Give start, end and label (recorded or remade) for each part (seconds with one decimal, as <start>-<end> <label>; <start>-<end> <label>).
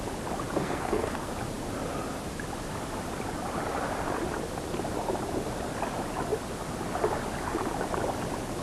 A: 0.0-0.6 recorded; 0.6-1.3 remade; 1.3-8.6 recorded